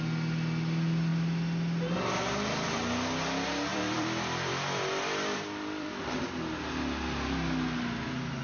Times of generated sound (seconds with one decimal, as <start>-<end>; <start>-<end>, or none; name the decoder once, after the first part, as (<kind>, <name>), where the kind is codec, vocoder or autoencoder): 3.7-5.9 (vocoder, BigVGAN v2)